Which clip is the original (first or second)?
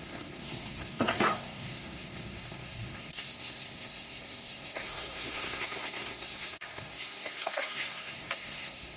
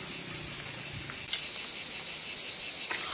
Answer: second